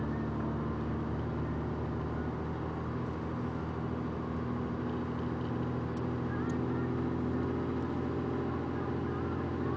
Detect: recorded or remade recorded